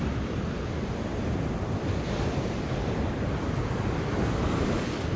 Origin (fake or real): real